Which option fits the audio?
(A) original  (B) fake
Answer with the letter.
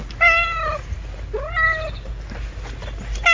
A